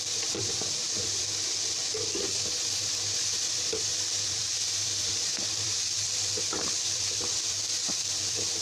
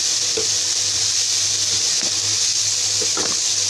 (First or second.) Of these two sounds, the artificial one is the first